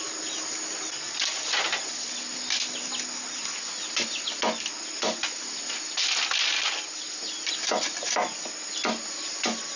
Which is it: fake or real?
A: real